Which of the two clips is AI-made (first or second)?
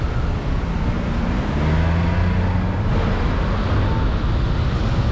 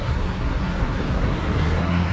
second